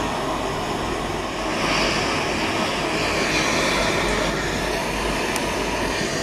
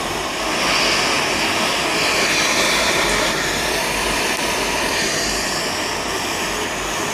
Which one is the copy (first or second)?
second